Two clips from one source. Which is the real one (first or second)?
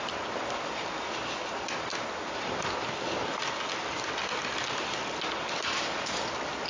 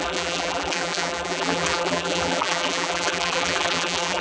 first